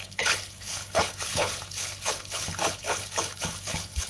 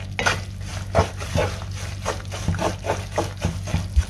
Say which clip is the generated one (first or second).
first